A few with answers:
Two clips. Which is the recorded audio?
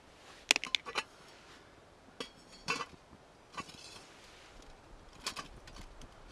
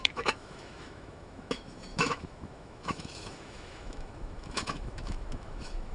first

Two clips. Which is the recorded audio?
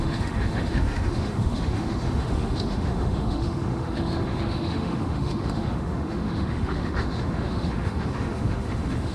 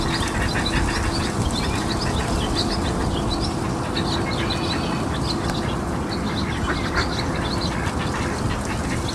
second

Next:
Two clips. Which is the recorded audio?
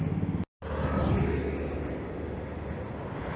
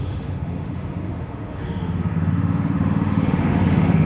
first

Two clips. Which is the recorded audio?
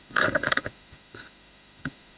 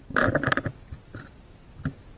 second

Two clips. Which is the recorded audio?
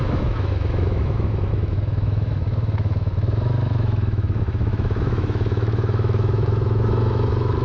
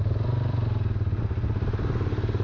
second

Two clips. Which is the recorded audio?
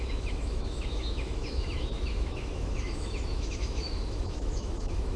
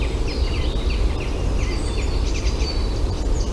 second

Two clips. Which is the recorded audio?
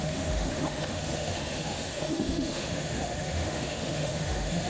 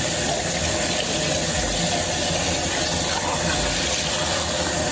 second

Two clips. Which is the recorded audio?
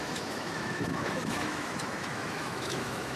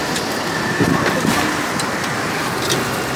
second